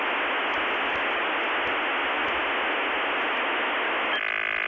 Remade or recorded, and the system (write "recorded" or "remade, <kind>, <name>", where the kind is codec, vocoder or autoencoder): recorded